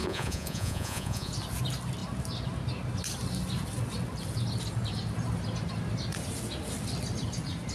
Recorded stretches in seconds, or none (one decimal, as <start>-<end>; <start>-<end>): 1.3-7.7